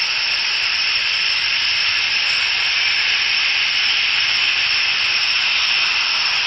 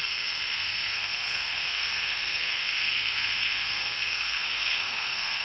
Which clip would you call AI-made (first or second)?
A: second